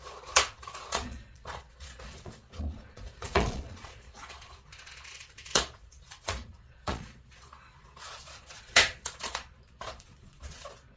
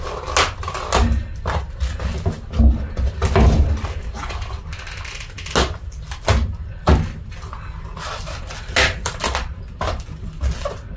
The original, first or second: second